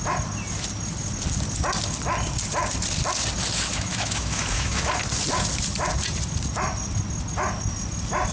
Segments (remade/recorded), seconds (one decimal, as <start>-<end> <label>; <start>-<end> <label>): 0.0-3.7 recorded; 3.7-4.9 remade; 4.9-8.3 recorded